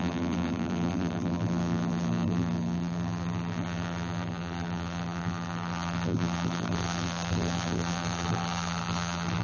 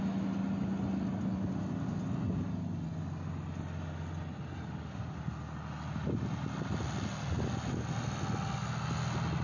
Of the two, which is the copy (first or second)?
first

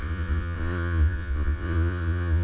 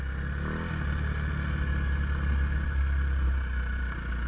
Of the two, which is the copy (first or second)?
first